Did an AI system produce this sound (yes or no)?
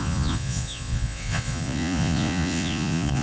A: yes